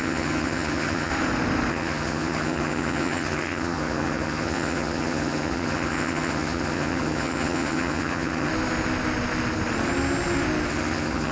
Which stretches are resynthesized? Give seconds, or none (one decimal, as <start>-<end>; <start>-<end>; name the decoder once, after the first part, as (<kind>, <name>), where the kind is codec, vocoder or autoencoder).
0.0-1.1 (vocoder, HiFi-GAN); 1.7-8.5; 10.7-11.3